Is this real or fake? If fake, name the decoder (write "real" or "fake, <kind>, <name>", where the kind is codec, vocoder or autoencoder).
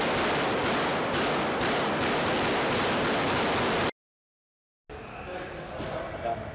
real